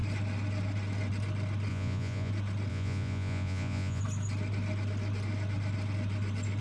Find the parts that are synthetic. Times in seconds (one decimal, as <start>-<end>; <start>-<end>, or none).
1.7-2.3; 2.7-4.0